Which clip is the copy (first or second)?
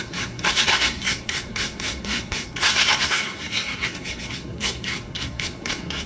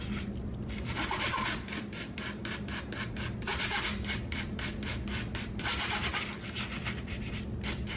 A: first